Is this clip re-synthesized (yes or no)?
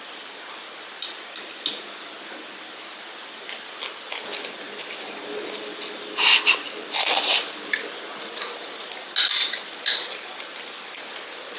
no